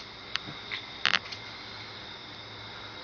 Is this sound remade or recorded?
recorded